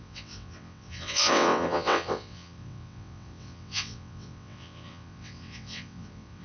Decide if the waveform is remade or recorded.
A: remade